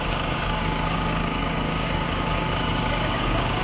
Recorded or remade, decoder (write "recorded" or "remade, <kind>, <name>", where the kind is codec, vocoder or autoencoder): remade, codec, DAC